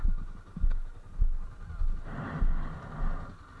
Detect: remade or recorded recorded